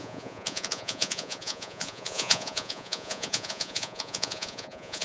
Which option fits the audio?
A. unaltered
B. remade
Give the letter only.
B